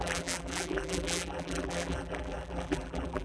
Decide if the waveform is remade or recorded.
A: remade